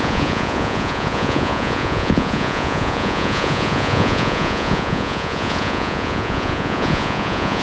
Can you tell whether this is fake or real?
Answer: fake